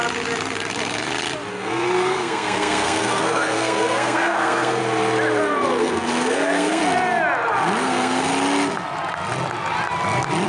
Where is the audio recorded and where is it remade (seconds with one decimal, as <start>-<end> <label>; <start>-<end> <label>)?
0.0-1.5 recorded; 1.5-4.8 remade; 4.8-5.8 recorded; 5.8-6.8 remade; 6.8-7.8 recorded; 7.8-8.3 remade; 8.3-10.5 recorded